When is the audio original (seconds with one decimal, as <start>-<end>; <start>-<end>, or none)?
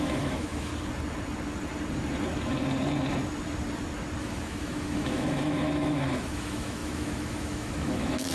0.7-4.2